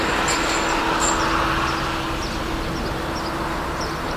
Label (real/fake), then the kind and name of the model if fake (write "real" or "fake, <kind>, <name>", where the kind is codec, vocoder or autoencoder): real